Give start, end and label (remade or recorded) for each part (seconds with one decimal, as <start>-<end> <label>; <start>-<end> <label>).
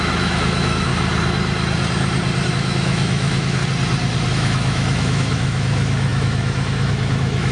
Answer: 0.0-0.9 remade; 0.9-2.5 recorded; 2.5-3.6 remade; 3.6-4.3 recorded; 4.3-7.5 remade